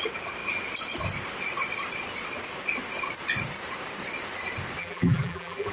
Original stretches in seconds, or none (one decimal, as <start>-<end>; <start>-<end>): 0.0-4.8